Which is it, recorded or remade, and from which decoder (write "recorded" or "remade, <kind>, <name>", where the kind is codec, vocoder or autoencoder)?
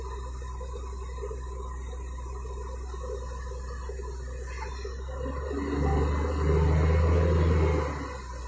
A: recorded